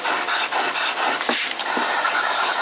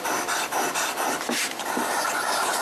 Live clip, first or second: first